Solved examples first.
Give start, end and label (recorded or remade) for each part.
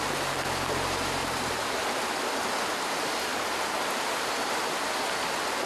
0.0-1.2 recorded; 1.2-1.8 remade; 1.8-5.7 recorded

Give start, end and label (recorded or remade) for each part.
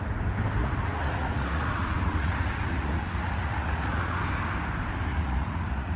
0.0-0.6 recorded; 0.6-4.2 remade; 4.2-5.1 recorded; 5.1-6.0 remade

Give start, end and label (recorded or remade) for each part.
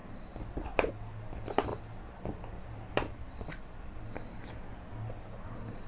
0.0-5.9 recorded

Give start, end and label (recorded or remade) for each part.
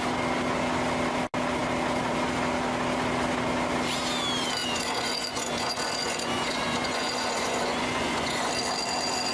0.0-4.6 recorded; 4.6-8.5 remade; 8.5-9.3 recorded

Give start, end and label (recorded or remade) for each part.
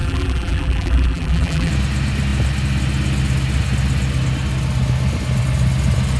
0.0-1.7 remade; 1.7-6.2 recorded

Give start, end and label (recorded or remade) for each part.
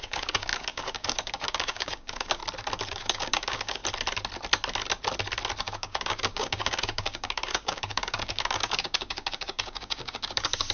0.0-2.4 remade; 2.4-2.9 recorded; 2.9-3.8 remade; 3.8-5.6 recorded; 5.6-10.7 remade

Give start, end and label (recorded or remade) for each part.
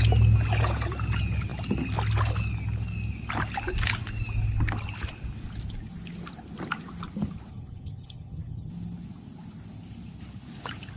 0.0-7.5 recorded; 7.5-8.7 remade; 8.7-11.0 recorded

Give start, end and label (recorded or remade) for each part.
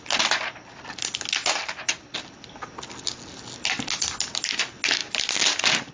0.0-5.9 recorded